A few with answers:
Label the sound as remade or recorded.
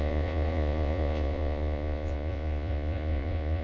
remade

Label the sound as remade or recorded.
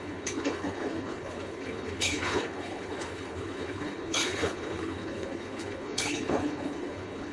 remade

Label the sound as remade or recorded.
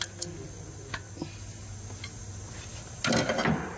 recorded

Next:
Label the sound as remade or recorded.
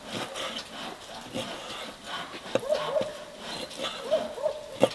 recorded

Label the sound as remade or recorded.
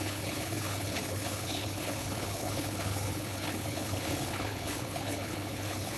remade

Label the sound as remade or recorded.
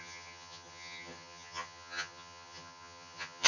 remade